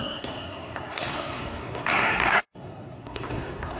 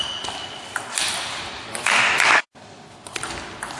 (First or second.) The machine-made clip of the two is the first